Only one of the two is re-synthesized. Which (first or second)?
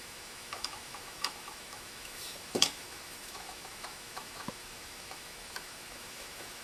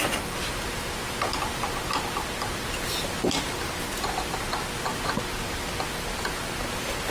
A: first